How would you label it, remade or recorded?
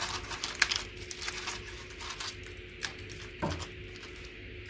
recorded